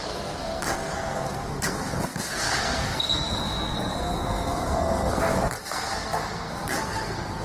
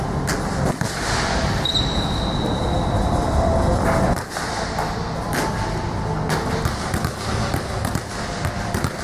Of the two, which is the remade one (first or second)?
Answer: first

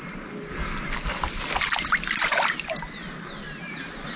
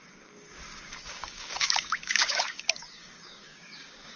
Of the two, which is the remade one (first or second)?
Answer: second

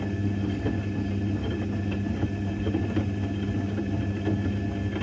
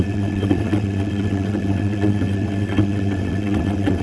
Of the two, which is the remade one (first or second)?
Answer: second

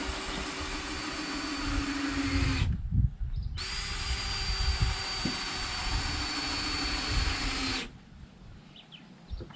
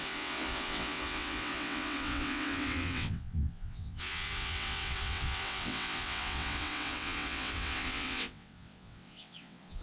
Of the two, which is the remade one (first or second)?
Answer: second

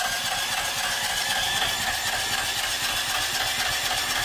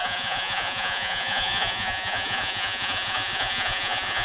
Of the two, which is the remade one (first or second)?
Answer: second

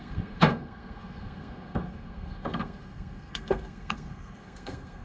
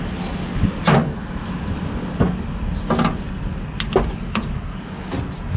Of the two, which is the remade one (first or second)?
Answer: first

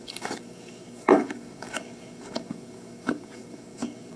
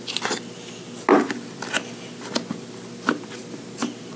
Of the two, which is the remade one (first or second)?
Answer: first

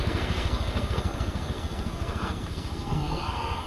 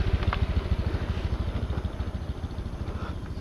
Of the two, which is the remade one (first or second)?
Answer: first